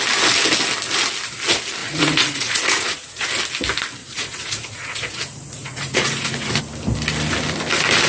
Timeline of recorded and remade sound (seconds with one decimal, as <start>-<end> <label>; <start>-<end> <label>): 0.0-1.8 recorded; 1.8-3.3 remade; 3.3-4.0 recorded; 4.0-6.6 remade; 6.6-8.1 recorded